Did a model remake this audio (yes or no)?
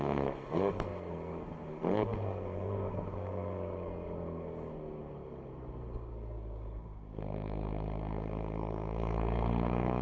yes